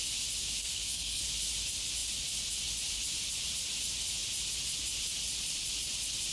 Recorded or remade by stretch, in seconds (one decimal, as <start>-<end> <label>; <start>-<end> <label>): 0.0-0.6 recorded; 0.6-1.2 remade; 1.2-6.3 recorded